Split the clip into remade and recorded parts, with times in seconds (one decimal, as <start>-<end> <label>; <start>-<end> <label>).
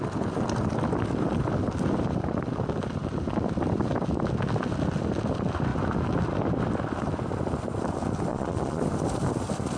0.0-8.3 recorded; 8.3-8.8 remade; 8.8-9.8 recorded